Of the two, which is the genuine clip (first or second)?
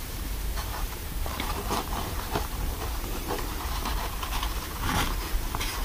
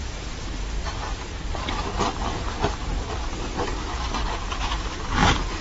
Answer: second